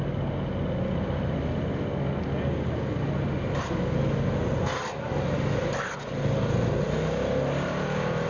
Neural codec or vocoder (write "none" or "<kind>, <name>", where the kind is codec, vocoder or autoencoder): none